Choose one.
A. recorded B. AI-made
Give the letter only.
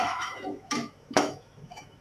B